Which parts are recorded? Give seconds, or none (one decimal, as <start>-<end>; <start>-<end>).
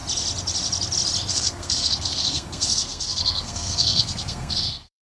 0.0-1.3